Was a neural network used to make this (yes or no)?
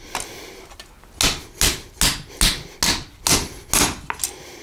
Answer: no